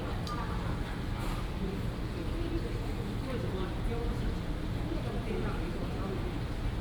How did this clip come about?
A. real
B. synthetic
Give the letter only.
A